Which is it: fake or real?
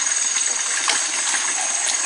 real